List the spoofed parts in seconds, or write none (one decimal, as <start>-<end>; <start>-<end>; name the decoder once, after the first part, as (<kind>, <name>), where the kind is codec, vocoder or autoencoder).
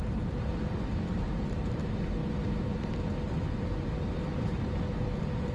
0.0-5.5 (vocoder, BigVGAN v2)